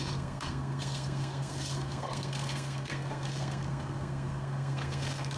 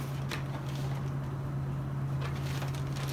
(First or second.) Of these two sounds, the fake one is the first